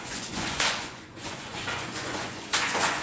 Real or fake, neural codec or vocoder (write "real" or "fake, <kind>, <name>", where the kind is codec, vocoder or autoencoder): fake, vocoder, Vocos